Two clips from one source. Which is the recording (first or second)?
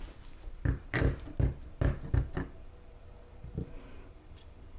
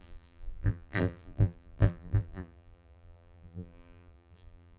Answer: first